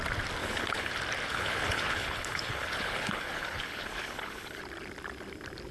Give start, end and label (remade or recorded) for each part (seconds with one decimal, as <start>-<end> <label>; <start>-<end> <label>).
0.0-0.4 recorded; 0.4-0.9 remade; 0.9-1.3 recorded; 1.3-4.6 remade; 4.6-5.7 recorded